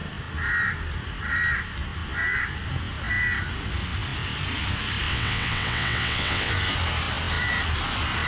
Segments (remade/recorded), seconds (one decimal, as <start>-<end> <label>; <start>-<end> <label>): 0.0-5.1 recorded; 5.1-6.5 remade; 6.5-8.3 recorded